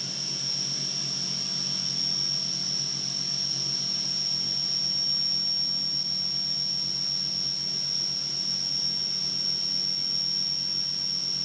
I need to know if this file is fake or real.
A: real